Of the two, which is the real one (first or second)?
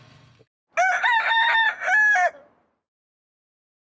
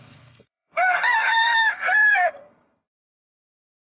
first